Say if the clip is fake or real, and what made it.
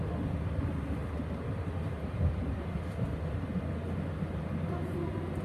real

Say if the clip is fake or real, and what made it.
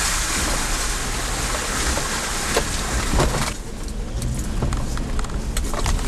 real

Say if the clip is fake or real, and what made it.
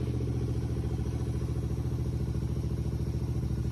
real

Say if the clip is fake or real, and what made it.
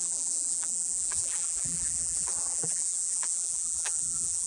fake, vocoder, BigVGAN v2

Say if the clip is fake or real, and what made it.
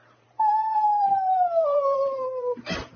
fake, vocoder, BigVGAN v2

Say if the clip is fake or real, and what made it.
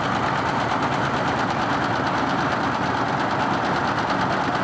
real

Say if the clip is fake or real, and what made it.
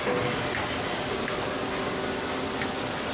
real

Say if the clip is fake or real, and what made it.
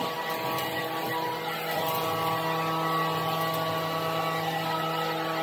real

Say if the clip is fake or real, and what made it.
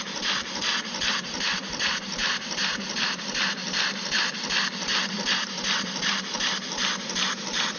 fake, vocoder, BigVGAN v2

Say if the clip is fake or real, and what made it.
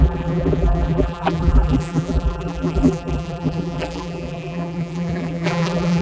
fake, vocoder, BigVGAN v2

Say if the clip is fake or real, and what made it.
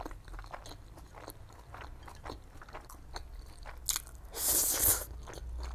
real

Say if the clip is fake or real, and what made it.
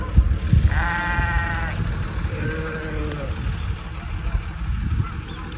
real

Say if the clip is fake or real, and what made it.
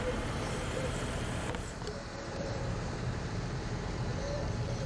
fake, vocoder, BigVGAN v2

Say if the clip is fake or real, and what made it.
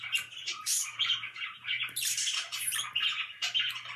fake, vocoder, BigVGAN v2